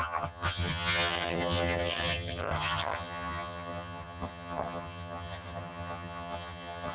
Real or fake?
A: fake